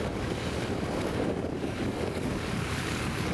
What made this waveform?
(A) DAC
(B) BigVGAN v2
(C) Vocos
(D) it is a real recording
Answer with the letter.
A